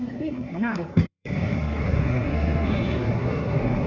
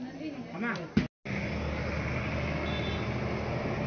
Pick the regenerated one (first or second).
first